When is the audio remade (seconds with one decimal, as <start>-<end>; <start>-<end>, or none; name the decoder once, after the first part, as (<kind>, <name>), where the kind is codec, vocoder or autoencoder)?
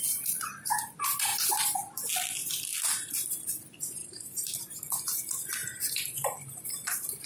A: 1.3-2.0 (vocoder, BigVGAN v2); 4.0-4.7; 5.6-6.6